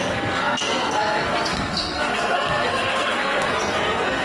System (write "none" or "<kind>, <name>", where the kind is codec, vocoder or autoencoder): codec, SNAC